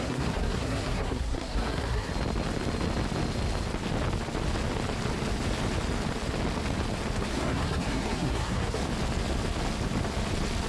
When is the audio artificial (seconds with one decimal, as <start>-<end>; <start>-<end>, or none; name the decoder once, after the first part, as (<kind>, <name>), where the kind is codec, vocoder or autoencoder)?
0.0-2.1 (codec, SNAC); 7.2-8.8

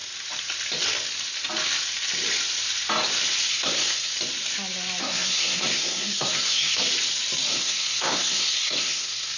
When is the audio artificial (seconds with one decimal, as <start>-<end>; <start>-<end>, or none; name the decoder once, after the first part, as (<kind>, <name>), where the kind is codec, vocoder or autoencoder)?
3.5-4.1 (codec, SNAC); 5.0-6.8; 7.5-9.4

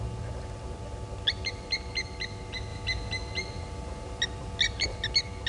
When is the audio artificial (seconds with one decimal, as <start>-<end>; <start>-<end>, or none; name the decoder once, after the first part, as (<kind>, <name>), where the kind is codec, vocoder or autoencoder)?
none